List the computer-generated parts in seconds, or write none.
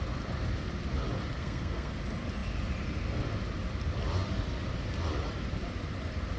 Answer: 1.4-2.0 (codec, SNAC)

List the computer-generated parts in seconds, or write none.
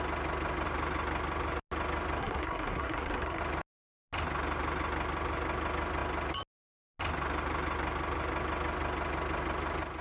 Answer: 2.2-3.4 (codec, SNAC)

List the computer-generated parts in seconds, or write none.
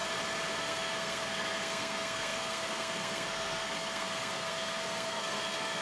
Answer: 0.6-5.8 (codec, SNAC)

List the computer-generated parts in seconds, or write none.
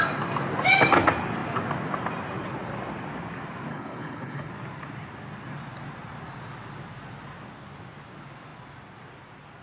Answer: 3.7-4.5 (codec, HILCodec)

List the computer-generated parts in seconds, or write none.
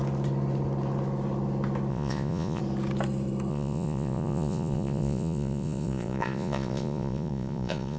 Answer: 1.9-2.6 (vocoder, Vocos); 3.5-8.0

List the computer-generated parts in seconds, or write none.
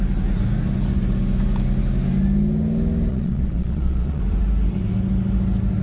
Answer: 3.1-4.2 (vocoder, Vocos)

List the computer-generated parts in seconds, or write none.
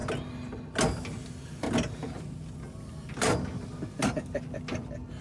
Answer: none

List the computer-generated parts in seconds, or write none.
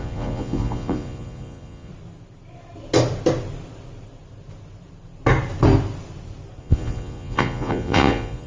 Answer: 0.0-1.9 (vocoder, Vocos); 6.6-8.5